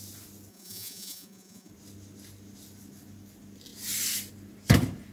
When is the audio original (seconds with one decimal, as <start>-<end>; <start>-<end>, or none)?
0.0-0.5; 1.7-5.1